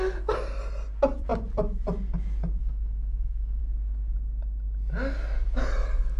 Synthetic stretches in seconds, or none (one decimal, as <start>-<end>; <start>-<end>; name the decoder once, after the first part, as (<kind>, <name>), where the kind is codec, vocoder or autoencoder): 2.6-3.6 (codec, SNAC)